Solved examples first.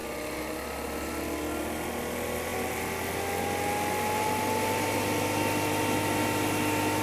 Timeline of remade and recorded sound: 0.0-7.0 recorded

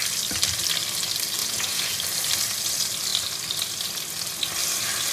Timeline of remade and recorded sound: 0.0-1.4 recorded; 1.4-1.9 remade; 1.9-5.1 recorded

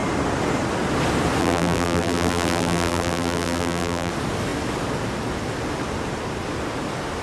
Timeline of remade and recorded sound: 0.0-1.4 recorded; 1.4-4.1 remade; 4.1-7.2 recorded

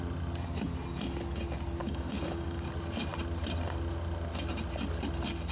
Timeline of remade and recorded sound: 0.0-1.8 recorded; 1.8-2.7 remade; 2.7-5.5 recorded